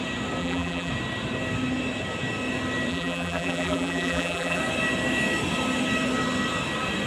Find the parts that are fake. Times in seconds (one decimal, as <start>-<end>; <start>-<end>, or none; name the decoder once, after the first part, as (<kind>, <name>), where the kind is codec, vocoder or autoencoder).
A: 0.4-0.9 (vocoder, BigVGAN v2); 2.9-4.6